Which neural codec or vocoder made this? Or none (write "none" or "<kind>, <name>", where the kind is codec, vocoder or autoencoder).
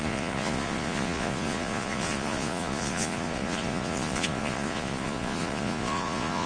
vocoder, Vocos